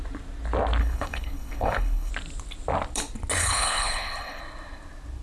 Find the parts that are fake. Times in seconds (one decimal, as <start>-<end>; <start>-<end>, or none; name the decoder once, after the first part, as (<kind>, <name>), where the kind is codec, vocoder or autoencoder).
0.8-2.1 (codec, HILCodec); 3.4-4.4